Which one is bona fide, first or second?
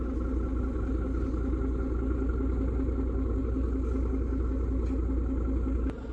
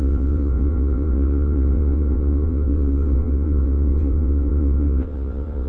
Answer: first